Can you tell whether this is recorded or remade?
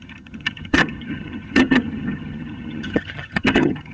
remade